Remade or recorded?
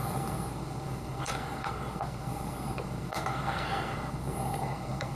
remade